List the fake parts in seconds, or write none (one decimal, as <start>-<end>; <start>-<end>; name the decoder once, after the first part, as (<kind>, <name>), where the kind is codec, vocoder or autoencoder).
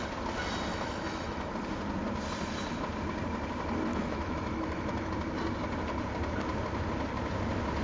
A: 0.7-1.5 (autoencoder, DAC-VAE); 3.9-5.1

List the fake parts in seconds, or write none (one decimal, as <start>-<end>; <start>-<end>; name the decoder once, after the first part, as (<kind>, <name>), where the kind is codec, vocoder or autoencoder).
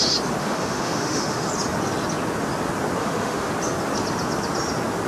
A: 0.4-1.5 (autoencoder, DAC-VAE); 3.0-3.5